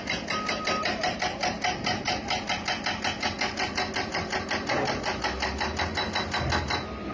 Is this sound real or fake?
real